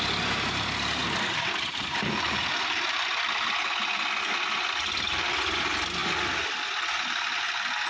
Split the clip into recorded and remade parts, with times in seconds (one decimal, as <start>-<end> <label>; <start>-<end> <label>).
0.0-7.9 recorded